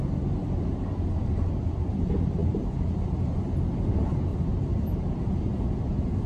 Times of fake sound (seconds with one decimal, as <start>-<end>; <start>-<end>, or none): 0.4-1.3; 2.4-2.9; 4.3-5.1

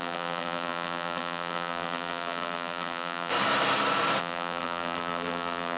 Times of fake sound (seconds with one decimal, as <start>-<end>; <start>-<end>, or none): 0.0-3.3; 4.2-5.8

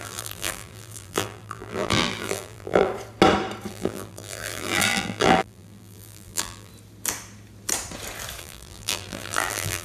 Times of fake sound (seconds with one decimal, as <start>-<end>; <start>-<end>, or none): 0.0-2.9; 3.7-6.7; 8.4-9.8

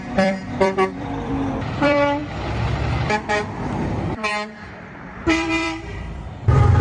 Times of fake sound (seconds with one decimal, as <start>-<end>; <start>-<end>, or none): 0.0-2.2; 3.9-4.3; 5.2-6.8